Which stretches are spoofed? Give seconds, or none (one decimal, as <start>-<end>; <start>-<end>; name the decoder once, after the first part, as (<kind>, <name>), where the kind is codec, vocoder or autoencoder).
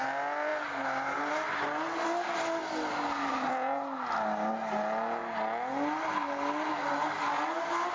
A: none